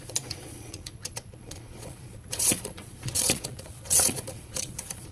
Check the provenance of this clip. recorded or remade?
remade